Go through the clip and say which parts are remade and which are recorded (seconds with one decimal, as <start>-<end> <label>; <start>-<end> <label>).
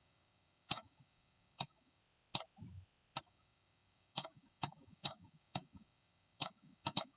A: 0.0-2.0 remade; 2.0-3.2 recorded; 3.2-7.2 remade